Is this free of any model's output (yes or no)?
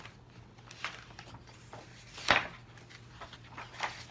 yes